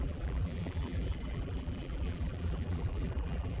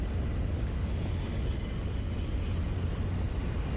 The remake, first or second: first